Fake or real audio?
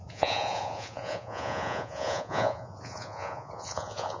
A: fake